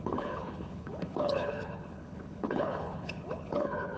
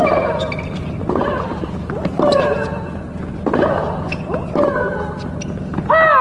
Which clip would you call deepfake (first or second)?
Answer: first